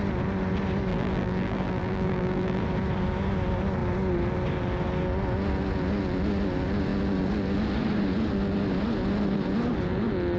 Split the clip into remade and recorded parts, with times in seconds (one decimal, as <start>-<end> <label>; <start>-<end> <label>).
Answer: 0.0-0.9 recorded; 0.9-2.6 remade; 2.6-10.4 recorded